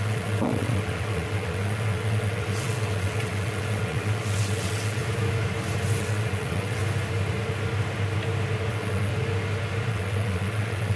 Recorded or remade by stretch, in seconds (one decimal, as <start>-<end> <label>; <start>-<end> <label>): 0.0-5.0 remade; 5.0-6.0 recorded; 6.0-6.8 remade; 6.8-8.7 recorded; 8.7-9.1 remade; 9.1-9.9 recorded; 9.9-11.0 remade

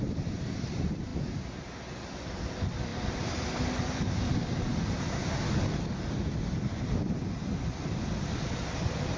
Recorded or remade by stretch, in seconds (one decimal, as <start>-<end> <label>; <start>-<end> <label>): 0.0-1.1 remade; 1.1-2.5 recorded; 2.5-9.2 remade

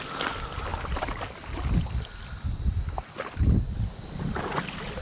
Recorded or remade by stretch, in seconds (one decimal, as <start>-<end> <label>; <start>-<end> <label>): 0.0-5.0 recorded

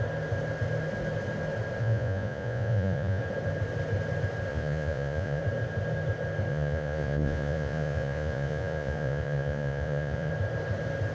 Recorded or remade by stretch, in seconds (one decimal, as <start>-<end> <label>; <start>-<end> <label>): 0.0-1.8 recorded; 1.8-3.2 remade; 3.2-4.5 recorded; 4.5-5.4 remade; 5.4-6.5 recorded; 6.5-10.3 remade; 10.3-11.1 recorded

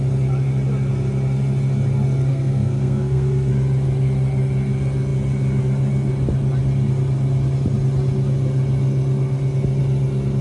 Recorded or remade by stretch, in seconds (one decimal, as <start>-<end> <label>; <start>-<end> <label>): 0.0-2.3 recorded; 2.3-3.5 remade; 3.5-10.4 recorded

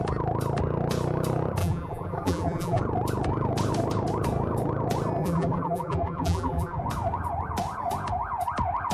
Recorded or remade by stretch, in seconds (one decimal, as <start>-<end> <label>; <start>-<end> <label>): 0.0-1.6 recorded; 1.6-2.8 remade; 2.8-5.2 recorded; 5.2-6.8 remade; 6.8-8.9 recorded

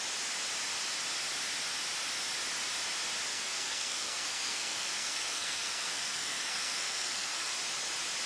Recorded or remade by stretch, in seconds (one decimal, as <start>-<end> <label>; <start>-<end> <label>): 0.0-3.3 recorded; 3.3-7.5 remade; 7.5-8.3 recorded

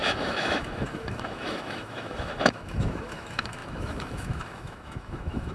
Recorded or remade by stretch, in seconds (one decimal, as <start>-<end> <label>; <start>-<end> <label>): 0.0-5.5 remade